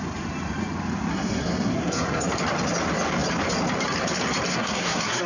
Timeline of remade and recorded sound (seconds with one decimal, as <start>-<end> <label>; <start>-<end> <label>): 0.0-1.1 recorded; 1.1-2.2 remade; 2.2-4.5 recorded; 4.5-5.3 remade